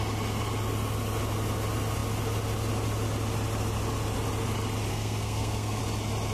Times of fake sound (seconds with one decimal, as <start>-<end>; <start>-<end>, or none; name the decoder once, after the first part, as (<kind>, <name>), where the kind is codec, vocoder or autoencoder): 4.9-5.8 (codec, SNAC)